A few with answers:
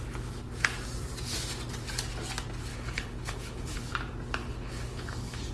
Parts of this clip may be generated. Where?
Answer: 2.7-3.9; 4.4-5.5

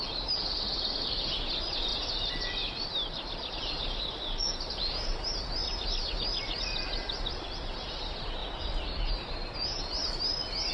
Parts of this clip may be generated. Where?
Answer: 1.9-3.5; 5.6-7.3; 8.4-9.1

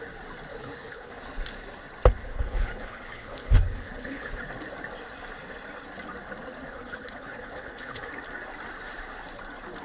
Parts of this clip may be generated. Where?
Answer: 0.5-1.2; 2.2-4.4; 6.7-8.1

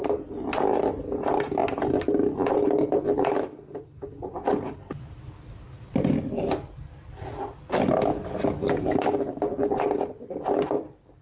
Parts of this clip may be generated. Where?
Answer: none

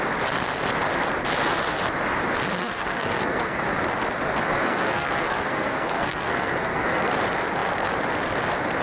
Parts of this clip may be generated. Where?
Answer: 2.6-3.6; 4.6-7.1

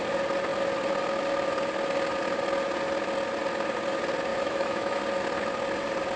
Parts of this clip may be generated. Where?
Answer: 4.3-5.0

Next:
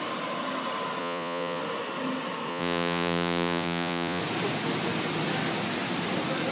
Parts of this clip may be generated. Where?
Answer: 1.0-1.6; 2.5-4.2